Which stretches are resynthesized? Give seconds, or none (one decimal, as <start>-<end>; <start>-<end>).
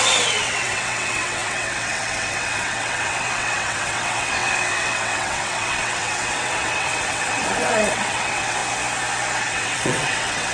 0.0-8.6; 9.4-10.5